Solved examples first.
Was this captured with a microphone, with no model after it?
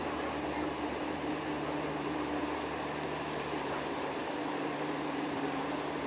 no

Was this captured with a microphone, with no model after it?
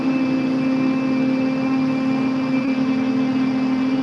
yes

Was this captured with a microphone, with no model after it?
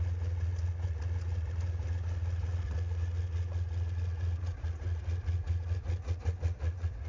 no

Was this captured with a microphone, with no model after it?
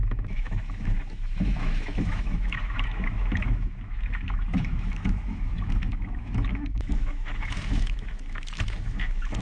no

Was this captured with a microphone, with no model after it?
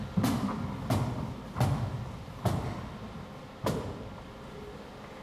yes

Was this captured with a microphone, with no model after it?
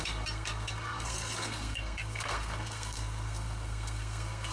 no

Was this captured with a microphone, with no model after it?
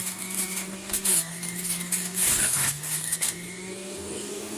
no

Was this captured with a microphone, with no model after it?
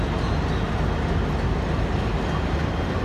yes